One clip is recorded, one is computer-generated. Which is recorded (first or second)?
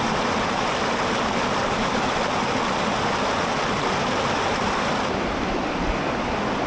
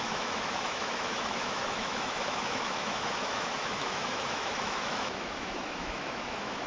first